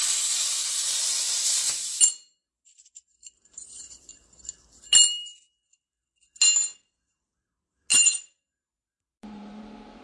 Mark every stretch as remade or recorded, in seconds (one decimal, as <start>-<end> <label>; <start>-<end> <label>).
0.0-0.6 recorded; 0.6-4.1 remade; 4.1-7.9 recorded; 7.9-9.6 remade; 9.6-10.0 recorded